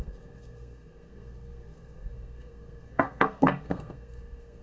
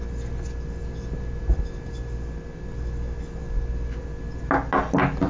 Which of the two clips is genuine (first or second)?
second